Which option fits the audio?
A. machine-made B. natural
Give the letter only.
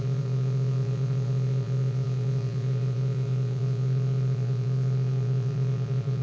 A